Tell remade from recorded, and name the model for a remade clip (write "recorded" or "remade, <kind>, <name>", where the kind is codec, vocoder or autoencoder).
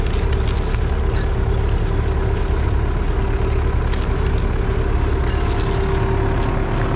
recorded